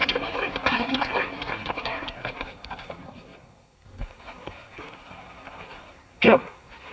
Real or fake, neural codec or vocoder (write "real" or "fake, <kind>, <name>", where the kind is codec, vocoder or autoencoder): fake, codec, SNAC